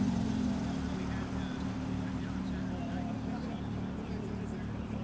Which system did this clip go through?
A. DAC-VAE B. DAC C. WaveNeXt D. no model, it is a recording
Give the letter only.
D